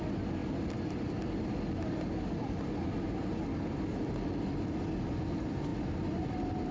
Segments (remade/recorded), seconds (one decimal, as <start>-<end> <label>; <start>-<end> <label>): 0.0-6.7 recorded